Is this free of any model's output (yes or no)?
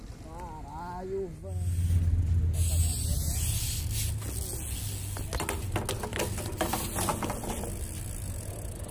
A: yes